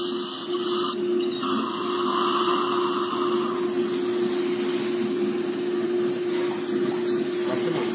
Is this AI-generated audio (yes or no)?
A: no